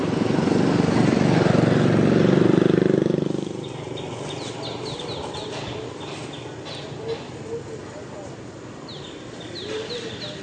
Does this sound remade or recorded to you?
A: recorded